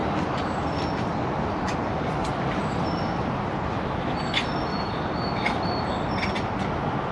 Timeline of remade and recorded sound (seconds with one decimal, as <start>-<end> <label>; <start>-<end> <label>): 0.0-7.1 recorded